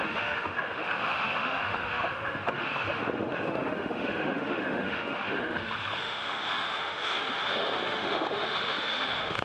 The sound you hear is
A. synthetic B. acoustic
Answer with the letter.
A